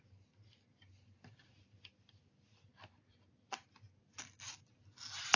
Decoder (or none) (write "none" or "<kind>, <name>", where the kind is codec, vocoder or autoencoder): none